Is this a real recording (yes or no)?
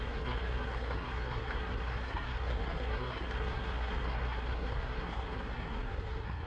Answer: no